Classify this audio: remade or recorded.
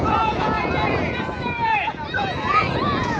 remade